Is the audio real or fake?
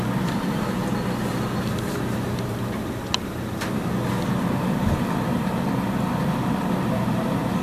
real